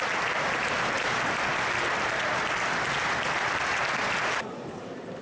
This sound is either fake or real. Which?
real